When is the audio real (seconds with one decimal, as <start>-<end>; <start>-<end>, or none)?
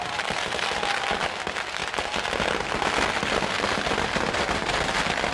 0.0-5.3